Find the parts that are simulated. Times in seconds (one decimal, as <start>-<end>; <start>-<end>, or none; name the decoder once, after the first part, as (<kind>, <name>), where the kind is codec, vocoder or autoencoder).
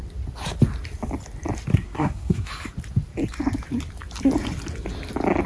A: 1.7-2.5 (codec, SNAC)